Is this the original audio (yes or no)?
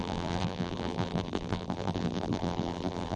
no